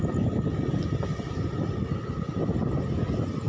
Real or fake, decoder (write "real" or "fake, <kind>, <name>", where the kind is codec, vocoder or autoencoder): real